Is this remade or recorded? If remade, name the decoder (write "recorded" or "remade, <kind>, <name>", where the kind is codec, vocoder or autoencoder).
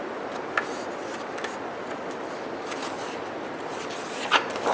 recorded